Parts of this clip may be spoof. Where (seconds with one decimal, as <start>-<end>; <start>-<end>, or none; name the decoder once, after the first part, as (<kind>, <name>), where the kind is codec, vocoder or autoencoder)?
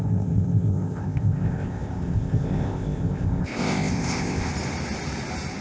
0.0-4.5 (codec, ZipCodec)